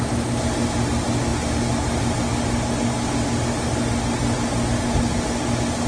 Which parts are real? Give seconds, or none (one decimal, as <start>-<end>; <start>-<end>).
0.0-5.9